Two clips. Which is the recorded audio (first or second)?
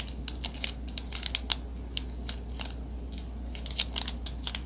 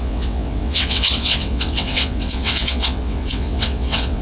first